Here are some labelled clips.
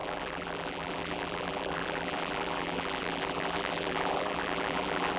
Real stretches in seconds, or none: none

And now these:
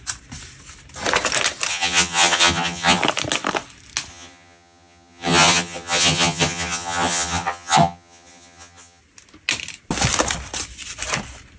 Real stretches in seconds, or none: 0.0-1.7; 3.0-4.1; 9.0-11.6

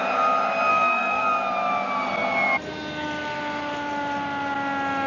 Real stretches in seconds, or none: 0.0-0.7; 1.2-5.1

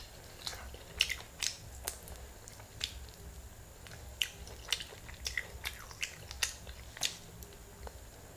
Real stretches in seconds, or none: 0.0-8.4

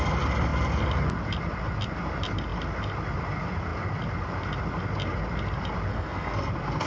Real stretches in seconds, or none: 0.0-5.9; 6.5-6.9

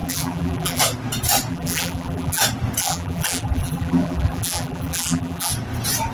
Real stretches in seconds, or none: 0.8-1.5; 2.4-2.8; 5.5-6.1